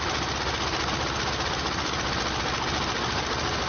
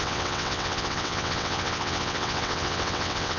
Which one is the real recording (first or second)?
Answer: first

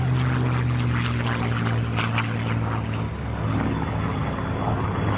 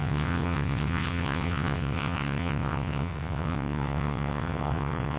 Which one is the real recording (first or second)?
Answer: first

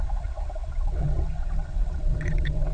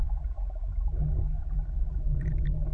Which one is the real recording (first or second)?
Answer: second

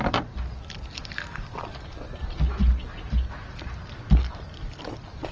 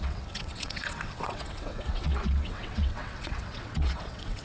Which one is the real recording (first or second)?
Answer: first